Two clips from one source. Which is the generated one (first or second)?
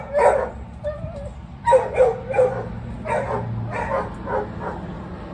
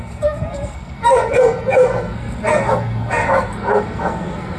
second